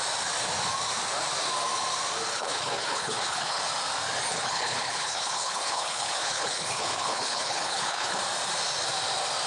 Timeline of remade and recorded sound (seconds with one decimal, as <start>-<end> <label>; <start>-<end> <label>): 0.0-2.3 recorded; 2.3-3.6 remade; 3.6-4.3 recorded; 4.3-8.2 remade; 8.2-9.5 recorded